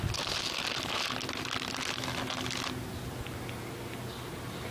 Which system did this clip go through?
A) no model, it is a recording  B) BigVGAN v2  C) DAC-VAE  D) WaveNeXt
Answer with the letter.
A